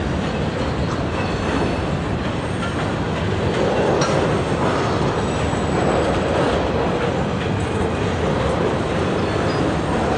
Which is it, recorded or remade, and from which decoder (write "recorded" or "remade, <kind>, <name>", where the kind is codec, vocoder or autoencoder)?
recorded